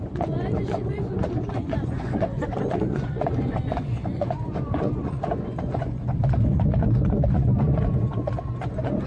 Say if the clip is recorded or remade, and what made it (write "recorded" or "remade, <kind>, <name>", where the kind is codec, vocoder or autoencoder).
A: remade, vocoder, Vocos